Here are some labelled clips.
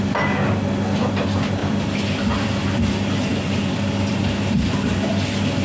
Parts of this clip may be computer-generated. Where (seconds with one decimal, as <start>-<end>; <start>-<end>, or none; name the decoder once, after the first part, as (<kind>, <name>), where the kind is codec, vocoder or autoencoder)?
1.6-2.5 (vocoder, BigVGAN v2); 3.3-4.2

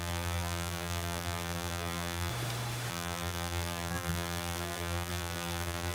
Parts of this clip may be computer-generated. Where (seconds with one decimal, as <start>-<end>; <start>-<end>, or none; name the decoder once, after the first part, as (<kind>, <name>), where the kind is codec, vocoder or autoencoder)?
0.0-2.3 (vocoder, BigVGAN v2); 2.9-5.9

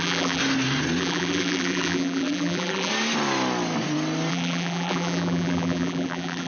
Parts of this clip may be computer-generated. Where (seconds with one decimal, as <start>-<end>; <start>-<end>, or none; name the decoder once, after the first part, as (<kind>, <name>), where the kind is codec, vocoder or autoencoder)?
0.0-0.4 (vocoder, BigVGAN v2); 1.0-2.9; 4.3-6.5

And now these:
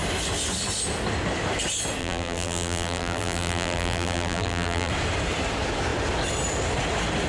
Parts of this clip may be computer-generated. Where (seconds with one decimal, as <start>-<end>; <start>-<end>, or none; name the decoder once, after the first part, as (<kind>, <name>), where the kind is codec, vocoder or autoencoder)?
2.0-4.9 (vocoder, BigVGAN v2)

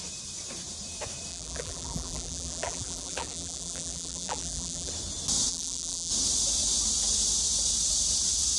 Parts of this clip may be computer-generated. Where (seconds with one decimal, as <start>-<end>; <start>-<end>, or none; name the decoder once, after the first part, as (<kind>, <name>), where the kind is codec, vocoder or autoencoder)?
1.3-4.9 (vocoder, BigVGAN v2); 5.5-6.1